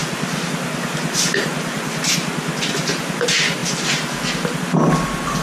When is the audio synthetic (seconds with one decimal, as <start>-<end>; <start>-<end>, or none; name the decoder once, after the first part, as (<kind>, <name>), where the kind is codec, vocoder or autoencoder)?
none